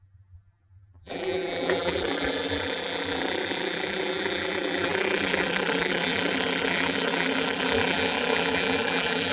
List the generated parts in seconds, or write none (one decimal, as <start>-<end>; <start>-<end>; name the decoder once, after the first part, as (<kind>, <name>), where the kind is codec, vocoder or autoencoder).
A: 0.0-9.3 (vocoder, BigVGAN v2)